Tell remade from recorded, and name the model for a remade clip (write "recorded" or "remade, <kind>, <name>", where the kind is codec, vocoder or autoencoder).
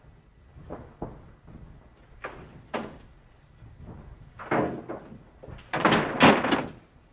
recorded